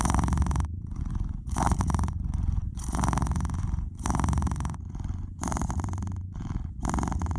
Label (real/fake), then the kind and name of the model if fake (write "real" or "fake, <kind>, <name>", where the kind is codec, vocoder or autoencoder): fake, vocoder, Vocos